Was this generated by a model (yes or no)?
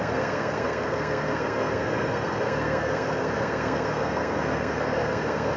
yes